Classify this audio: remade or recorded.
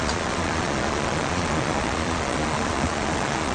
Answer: remade